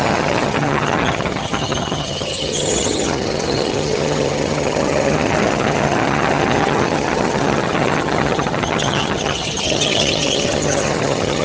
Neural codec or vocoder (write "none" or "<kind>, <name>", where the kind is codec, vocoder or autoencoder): vocoder, HiFi-GAN